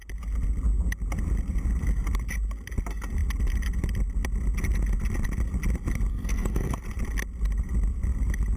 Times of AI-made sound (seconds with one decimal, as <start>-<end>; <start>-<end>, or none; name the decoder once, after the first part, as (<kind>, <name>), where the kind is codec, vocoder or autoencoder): 6.1-6.8 (codec, SNAC)